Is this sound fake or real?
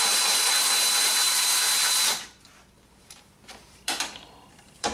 fake